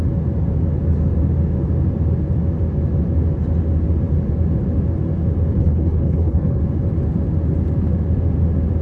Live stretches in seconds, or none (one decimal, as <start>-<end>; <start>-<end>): 0.0-5.6; 6.6-8.8